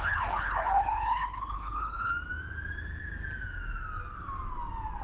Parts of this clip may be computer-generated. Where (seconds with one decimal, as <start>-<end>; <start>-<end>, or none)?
0.0-2.1